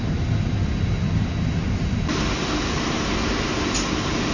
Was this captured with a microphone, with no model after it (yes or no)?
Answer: yes